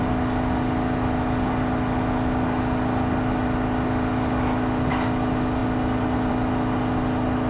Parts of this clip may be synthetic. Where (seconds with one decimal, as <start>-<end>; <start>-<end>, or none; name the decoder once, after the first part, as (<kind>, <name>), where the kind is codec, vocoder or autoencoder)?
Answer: none